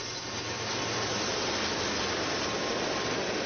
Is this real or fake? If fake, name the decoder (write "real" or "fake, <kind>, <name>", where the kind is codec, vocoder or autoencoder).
real